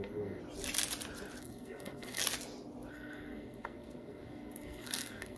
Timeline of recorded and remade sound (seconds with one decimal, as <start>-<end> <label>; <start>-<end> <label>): 0.0-0.4 remade; 0.4-1.4 recorded; 1.4-2.2 remade; 2.2-2.9 recorded; 2.9-5.4 remade